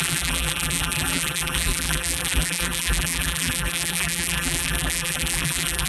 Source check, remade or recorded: remade